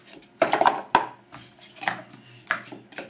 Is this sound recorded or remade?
recorded